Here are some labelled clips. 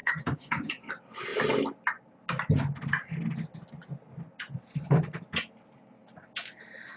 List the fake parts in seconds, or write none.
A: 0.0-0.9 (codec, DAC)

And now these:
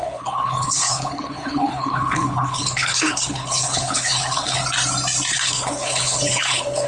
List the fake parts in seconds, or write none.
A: 0.0-4.6 (codec, HILCodec); 5.3-6.9

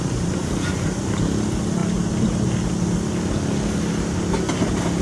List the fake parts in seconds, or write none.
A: none